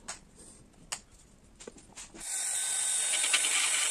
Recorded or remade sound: recorded